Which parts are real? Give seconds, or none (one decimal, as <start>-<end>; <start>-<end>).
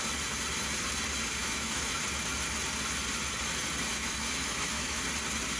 0.0-1.4; 2.0-3.9; 5.0-5.6